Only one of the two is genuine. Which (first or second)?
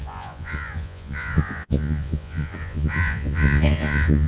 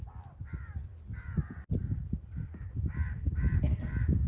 second